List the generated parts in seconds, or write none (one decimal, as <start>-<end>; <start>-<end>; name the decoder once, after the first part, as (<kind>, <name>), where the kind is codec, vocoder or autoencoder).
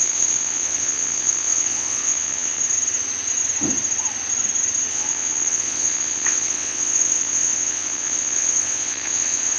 0.0-2.6 (vocoder, WaveNeXt); 4.9-9.6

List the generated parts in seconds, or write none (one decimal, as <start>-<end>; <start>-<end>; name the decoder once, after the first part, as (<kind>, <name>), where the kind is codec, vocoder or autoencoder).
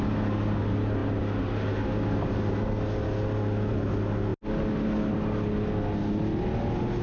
none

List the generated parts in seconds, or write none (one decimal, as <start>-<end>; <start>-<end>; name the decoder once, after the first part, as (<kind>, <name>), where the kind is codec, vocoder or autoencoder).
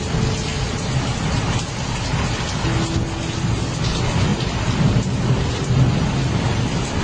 none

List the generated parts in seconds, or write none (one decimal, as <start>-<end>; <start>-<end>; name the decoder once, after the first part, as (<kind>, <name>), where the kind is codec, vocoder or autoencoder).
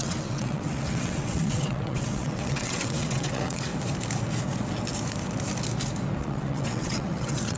0.0-3.7 (vocoder, WaveNeXt); 6.2-7.6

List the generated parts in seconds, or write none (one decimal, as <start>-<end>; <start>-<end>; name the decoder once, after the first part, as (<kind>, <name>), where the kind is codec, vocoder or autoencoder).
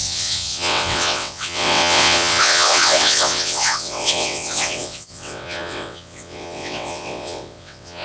0.0-8.0 (vocoder, WaveNeXt)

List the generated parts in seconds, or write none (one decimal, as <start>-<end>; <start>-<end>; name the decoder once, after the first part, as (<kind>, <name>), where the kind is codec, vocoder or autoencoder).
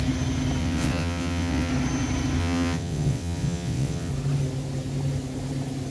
0.6-1.7 (vocoder, WaveNeXt); 2.4-4.1